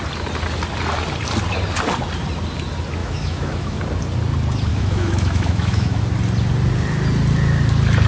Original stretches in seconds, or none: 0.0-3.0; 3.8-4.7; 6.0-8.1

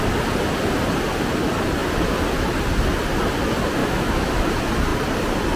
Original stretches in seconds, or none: 0.0-3.8; 4.5-5.6

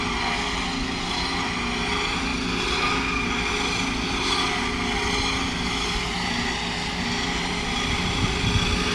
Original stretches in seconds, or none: 0.0-8.9

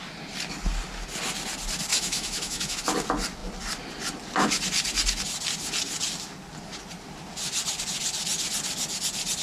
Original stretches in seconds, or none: 0.0-1.9; 2.8-9.4